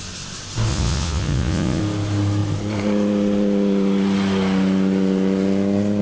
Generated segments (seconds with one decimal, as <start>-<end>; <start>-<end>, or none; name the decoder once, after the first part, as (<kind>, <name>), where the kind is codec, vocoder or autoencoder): 0.7-1.8 (vocoder, Vocos)